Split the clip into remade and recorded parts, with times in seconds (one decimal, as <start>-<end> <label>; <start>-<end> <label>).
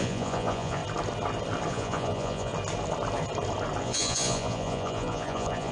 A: 0.0-0.8 remade; 0.8-1.7 recorded; 1.7-2.5 remade; 2.5-3.8 recorded; 3.8-5.7 remade